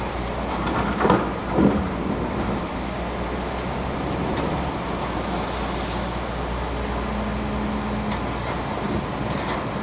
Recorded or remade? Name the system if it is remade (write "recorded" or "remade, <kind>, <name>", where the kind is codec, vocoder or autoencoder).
recorded